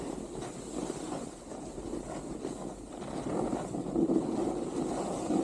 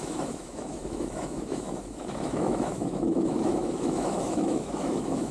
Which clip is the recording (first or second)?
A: first